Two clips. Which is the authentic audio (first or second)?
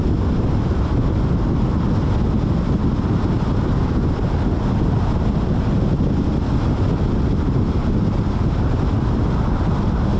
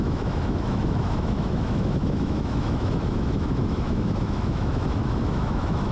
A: first